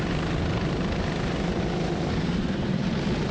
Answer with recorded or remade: recorded